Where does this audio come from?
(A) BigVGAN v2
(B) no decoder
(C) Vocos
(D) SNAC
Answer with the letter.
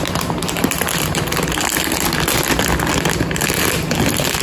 B